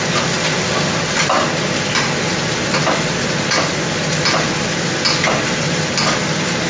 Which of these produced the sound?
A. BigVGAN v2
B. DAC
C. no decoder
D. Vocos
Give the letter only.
C